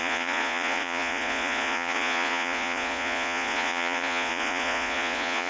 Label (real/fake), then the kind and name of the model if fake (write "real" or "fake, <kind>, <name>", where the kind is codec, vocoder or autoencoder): fake, vocoder, Vocos